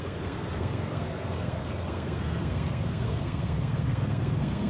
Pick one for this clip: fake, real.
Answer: fake